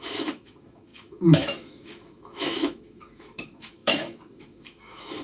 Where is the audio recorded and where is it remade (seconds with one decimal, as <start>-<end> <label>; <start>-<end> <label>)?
0.0-5.2 remade